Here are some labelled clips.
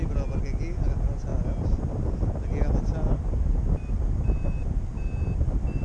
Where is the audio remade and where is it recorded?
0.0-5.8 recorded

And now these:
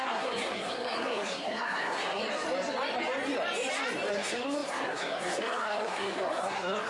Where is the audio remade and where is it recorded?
0.0-2.2 remade; 2.2-4.1 recorded; 4.1-6.9 remade

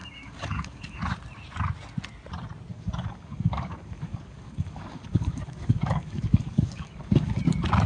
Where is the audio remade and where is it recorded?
0.0-1.0 remade; 1.0-2.7 recorded; 2.7-7.4 remade; 7.4-7.9 recorded